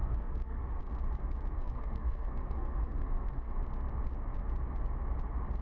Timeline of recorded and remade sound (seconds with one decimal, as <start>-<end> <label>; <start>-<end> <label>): 0.0-0.8 remade; 0.8-1.6 recorded; 1.6-3.5 remade; 3.5-5.6 recorded